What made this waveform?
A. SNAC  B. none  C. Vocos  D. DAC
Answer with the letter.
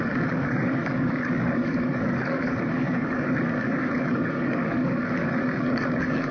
D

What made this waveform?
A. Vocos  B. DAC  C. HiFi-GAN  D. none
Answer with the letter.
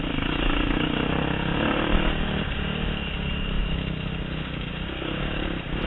B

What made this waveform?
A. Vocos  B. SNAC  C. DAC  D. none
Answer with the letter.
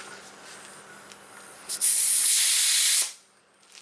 D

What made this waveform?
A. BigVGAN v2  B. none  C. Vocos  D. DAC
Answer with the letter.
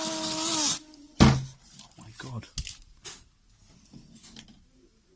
B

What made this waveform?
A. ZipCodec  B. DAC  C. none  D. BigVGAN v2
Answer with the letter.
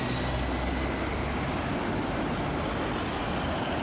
C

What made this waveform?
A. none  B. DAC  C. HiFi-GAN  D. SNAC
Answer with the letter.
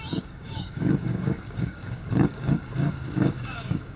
B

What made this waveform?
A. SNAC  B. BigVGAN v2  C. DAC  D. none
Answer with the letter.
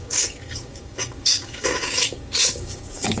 C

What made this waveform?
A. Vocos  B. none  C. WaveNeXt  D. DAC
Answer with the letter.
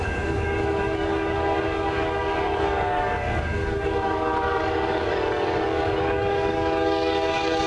D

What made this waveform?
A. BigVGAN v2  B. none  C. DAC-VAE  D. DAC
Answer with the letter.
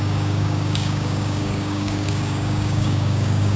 D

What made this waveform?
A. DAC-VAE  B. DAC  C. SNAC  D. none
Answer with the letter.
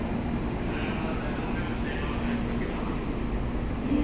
D